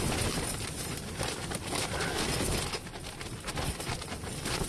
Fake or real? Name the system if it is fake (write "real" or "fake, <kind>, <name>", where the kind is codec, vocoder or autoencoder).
real